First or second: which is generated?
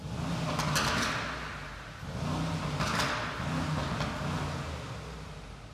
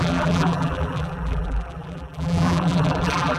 second